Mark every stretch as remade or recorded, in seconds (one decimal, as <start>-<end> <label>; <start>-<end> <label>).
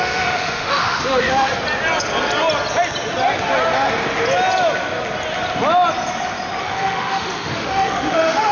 0.0-1.5 remade; 1.5-6.6 recorded; 6.6-8.5 remade